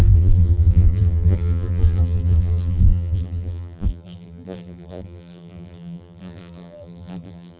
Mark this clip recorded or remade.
remade